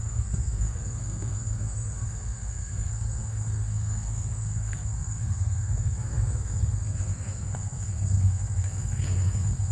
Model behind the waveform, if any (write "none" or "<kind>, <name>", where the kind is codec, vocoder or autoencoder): codec, SNAC